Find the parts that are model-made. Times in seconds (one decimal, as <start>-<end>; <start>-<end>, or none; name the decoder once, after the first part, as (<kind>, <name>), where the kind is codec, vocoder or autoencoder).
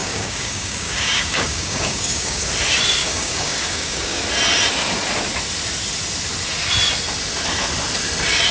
0.0-2.4 (codec, DAC); 3.0-4.2